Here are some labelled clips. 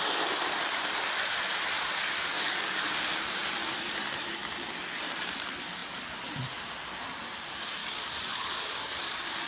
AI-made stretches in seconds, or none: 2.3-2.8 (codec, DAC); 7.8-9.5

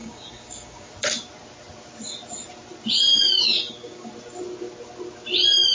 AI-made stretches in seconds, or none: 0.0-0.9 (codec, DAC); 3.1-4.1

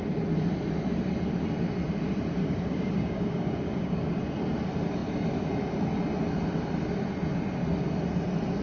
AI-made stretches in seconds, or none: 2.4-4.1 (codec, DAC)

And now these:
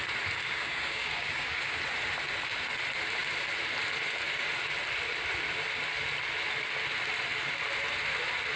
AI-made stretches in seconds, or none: 0.4-1.7 (codec, DAC)